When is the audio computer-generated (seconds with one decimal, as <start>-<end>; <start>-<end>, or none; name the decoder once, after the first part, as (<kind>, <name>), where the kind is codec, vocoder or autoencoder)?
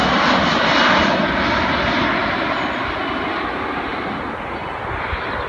none